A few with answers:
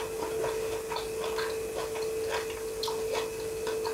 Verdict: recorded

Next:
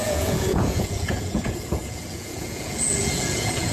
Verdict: remade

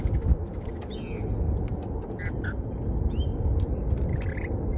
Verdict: recorded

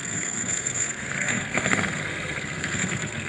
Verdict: remade